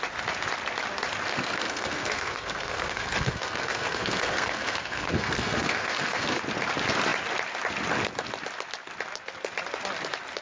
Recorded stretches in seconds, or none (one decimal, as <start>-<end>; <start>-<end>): 0.0-1.3; 6.4-10.4